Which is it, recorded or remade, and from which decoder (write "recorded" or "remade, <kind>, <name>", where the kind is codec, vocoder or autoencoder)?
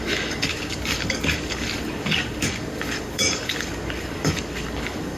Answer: remade, codec, DAC